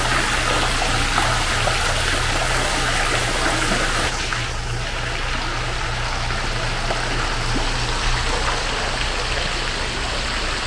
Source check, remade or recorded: recorded